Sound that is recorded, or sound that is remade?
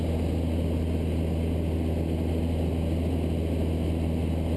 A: recorded